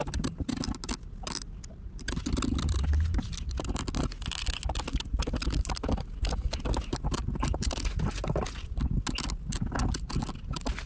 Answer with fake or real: real